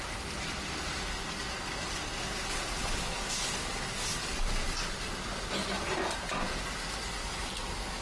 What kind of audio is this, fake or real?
real